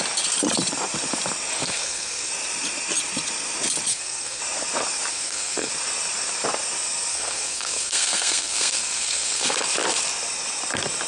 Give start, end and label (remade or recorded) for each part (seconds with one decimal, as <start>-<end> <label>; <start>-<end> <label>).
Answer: 0.0-1.6 recorded; 1.6-2.3 remade; 2.3-3.9 recorded; 3.9-4.4 remade; 4.4-5.1 recorded; 5.1-5.7 remade; 5.7-7.1 recorded; 7.1-9.5 remade; 9.5-11.1 recorded